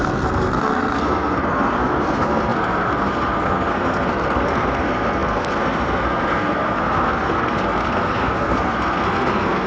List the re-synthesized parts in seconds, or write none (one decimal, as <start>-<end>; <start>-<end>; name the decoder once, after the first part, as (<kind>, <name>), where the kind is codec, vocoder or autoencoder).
0.0-9.7 (codec, SNAC)